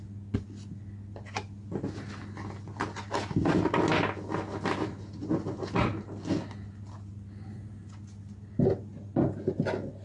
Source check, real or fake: real